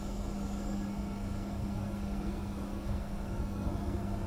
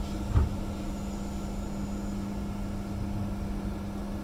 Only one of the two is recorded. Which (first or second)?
second